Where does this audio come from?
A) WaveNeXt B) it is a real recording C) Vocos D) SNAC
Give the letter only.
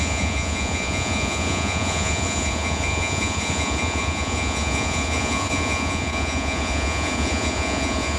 C